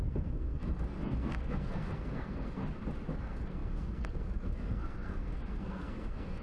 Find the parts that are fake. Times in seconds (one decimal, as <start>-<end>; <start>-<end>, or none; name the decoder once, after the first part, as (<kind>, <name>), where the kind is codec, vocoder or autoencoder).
0.0-2.6 (codec, SNAC); 3.2-6.4